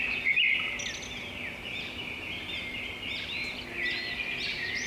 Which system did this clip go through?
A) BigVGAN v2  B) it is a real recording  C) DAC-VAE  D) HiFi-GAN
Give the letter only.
B